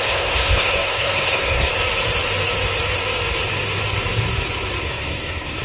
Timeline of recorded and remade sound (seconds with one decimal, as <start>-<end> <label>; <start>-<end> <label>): 0.0-1.7 remade; 1.7-4.8 recorded; 4.8-5.6 remade